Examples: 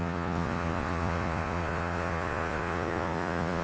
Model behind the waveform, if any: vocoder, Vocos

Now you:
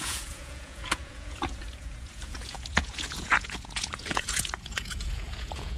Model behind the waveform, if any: vocoder, Vocos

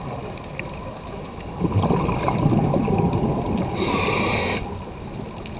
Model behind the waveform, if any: none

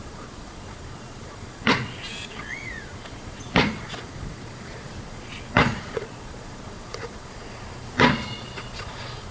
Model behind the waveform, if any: vocoder, Vocos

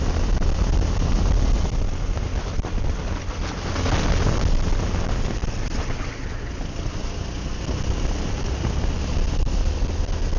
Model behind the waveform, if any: none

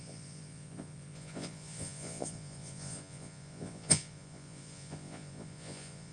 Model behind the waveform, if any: vocoder, Vocos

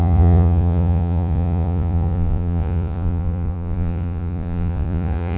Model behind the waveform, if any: vocoder, Vocos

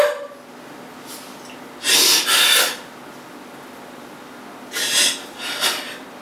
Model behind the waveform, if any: none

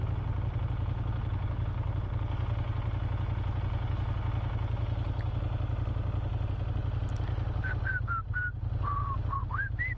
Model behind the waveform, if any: none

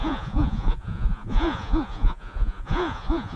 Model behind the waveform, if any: vocoder, Vocos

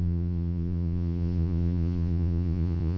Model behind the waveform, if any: vocoder, Vocos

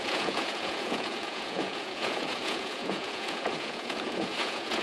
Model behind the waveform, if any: vocoder, Vocos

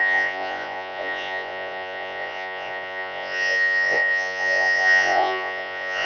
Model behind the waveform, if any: vocoder, Vocos